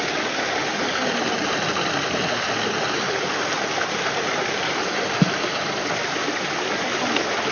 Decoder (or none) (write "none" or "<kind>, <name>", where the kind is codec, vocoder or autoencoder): none